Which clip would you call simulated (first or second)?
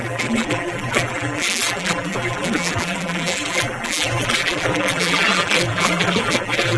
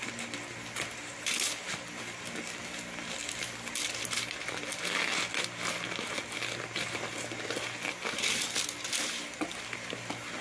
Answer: first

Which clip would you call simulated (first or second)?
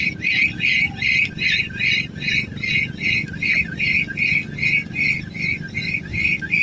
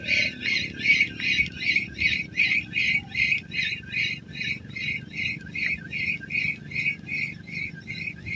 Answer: second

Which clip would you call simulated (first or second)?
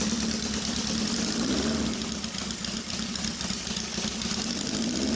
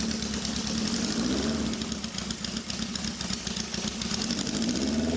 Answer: first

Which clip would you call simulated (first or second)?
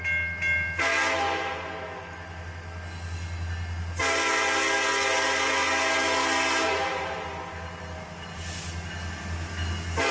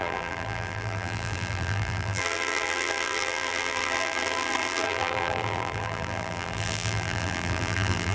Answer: second